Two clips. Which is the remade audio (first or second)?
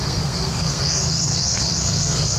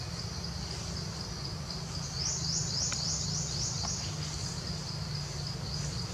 first